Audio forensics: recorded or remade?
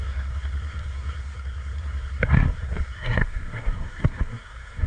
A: remade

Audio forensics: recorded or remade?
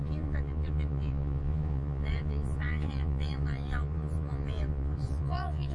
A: remade